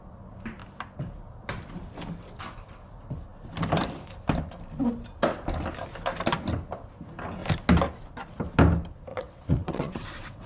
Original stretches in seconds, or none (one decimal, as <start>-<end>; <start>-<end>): 0.0-9.1